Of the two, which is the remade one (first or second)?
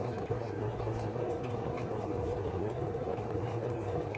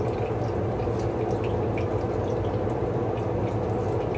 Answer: first